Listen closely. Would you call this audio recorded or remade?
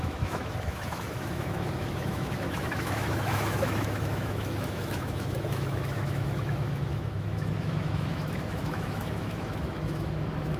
remade